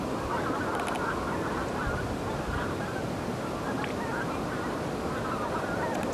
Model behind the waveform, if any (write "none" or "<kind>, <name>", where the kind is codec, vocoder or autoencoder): none